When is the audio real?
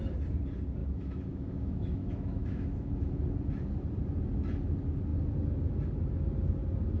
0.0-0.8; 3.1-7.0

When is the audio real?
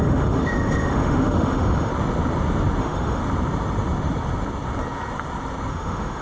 1.9-2.8; 3.2-5.7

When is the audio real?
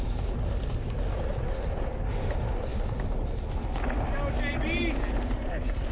0.0-5.9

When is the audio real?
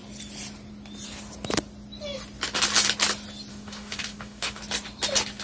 0.0-3.5; 4.6-5.4